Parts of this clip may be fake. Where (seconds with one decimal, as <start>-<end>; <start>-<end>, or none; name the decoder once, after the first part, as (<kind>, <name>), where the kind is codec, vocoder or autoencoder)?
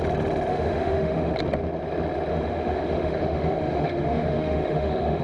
0.5-1.3 (autoencoder, DAC-VAE); 2.3-5.2